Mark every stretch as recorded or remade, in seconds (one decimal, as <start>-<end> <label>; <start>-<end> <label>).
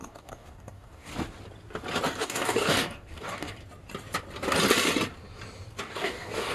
0.0-1.1 remade; 1.1-2.2 recorded; 2.2-3.6 remade; 3.6-5.8 recorded; 5.8-6.5 remade